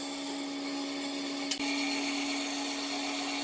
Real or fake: real